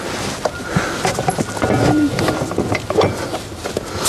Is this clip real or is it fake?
real